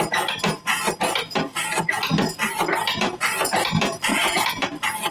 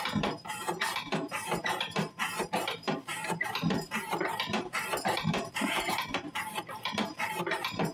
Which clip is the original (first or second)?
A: first